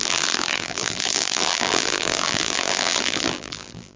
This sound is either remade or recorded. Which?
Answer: remade